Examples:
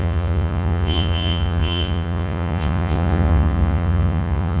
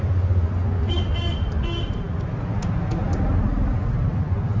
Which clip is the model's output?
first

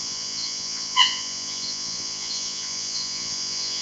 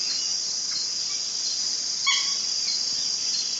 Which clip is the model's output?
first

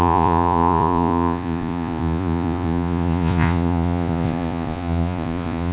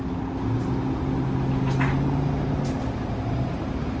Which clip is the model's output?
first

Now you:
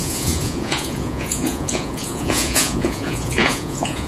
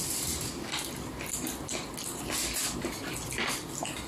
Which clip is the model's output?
first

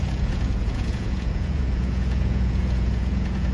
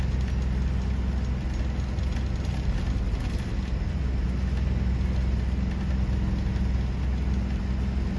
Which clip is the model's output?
first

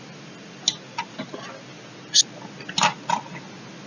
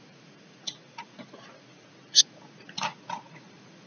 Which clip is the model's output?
second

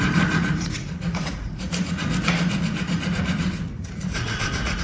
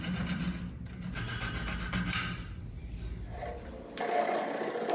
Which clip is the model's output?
first